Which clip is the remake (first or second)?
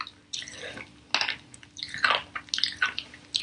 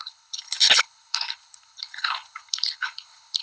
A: second